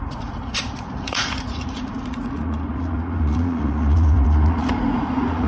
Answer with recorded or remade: remade